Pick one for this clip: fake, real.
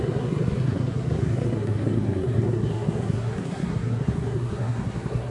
fake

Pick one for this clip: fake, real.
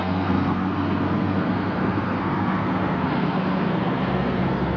fake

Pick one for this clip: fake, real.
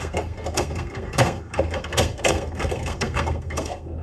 fake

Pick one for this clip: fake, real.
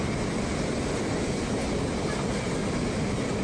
real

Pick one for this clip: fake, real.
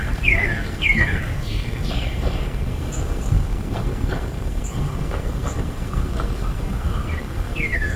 fake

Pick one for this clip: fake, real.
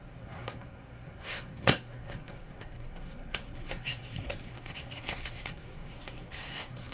fake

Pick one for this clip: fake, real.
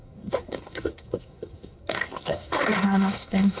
fake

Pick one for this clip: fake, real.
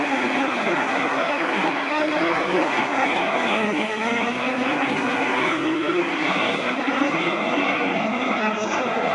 fake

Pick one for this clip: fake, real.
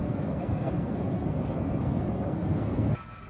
fake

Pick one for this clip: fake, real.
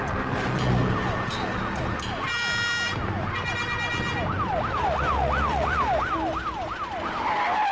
real